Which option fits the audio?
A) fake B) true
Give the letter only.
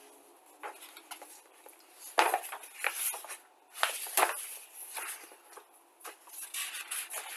B